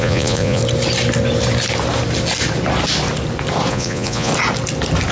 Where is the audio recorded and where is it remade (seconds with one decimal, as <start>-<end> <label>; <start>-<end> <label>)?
0.0-0.6 remade; 0.6-3.7 recorded; 3.7-4.3 remade; 4.3-5.1 recorded